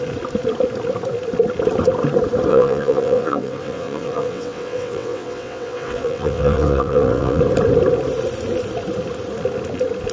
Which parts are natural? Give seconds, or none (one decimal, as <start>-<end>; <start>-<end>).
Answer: 0.0-2.5; 7.4-10.1